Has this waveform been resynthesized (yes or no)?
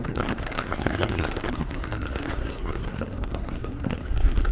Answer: yes